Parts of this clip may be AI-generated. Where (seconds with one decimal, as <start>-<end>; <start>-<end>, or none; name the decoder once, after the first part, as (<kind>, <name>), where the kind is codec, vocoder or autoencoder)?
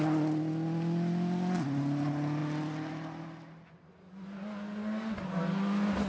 none